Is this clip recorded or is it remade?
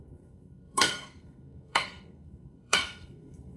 remade